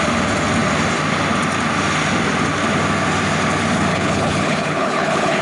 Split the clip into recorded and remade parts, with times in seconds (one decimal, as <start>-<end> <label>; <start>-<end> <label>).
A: 0.0-3.9 recorded; 3.9-5.4 remade